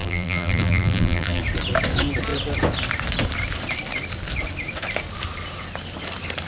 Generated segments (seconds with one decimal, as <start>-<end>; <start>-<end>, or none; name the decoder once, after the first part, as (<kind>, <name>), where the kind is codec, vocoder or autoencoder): 0.0-1.4 (vocoder, BigVGAN v2)